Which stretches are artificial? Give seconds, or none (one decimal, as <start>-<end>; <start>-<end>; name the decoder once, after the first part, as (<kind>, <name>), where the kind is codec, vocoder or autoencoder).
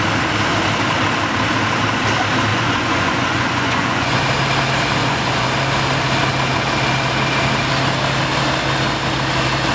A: 2.5-4.2 (vocoder, Vocos); 5.0-5.5